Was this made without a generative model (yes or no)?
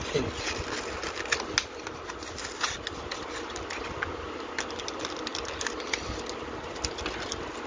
yes